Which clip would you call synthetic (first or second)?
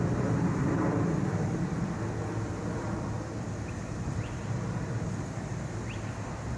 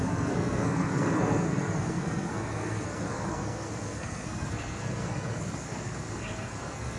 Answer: second